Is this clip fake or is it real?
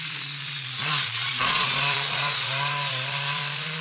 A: fake